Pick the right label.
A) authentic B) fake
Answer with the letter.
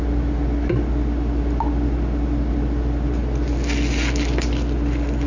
A